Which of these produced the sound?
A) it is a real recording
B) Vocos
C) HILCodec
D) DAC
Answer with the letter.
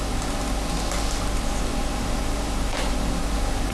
A